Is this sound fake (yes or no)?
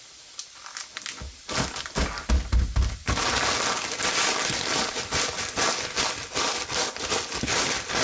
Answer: no